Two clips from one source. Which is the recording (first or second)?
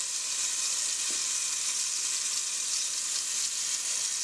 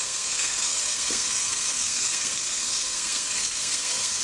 first